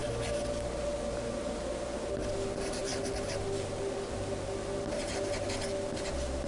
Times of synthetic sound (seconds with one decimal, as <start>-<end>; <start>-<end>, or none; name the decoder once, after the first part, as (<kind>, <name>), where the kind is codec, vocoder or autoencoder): none

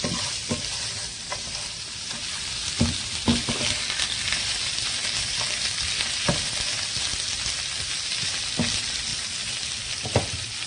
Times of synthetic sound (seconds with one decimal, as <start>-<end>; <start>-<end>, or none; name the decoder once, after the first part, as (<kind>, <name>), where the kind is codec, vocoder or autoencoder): none

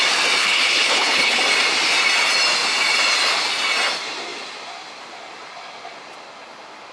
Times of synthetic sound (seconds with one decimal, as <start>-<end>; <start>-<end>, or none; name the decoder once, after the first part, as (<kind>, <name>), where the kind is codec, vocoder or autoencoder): 0.4-1.4 (codec, HILCodec)

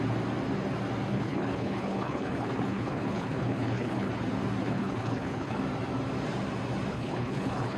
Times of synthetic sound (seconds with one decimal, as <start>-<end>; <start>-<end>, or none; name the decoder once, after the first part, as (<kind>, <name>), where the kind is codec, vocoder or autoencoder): 1.1-4.1 (codec, HILCodec); 4.6-5.6; 6.9-7.8

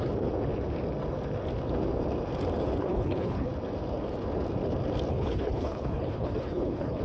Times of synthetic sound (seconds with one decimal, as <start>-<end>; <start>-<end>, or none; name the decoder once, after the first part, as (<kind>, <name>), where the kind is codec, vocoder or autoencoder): 2.8-3.5 (codec, HILCodec); 5.1-7.0

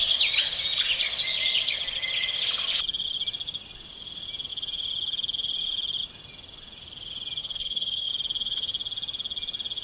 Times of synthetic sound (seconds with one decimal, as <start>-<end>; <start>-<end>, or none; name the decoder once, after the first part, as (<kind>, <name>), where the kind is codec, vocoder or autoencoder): 7.4-8.1 (codec, HILCodec)